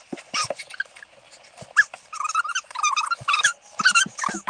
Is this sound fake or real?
real